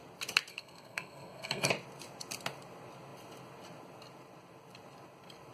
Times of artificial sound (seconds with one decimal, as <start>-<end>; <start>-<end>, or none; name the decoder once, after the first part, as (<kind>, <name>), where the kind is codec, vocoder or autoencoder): 0.5-1.7 (codec, SNAC)